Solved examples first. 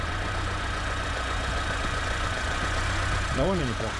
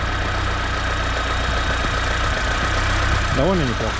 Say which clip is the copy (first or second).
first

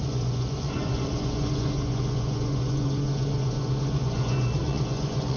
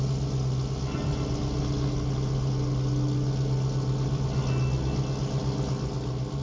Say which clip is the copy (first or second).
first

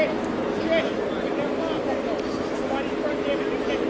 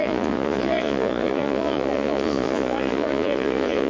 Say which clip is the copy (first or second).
second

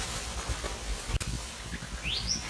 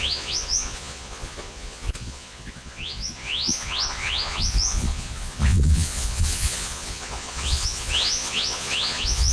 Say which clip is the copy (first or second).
second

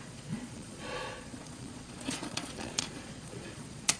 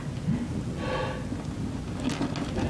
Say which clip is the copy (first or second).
first